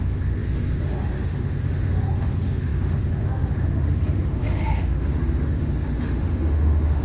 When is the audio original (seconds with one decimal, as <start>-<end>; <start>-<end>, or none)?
none